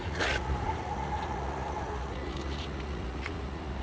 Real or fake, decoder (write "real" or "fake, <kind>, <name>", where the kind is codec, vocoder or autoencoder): fake, vocoder, Vocos